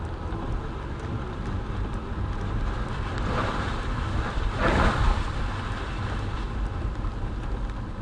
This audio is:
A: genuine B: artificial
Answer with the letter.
A